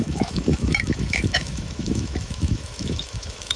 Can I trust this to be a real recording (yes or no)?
no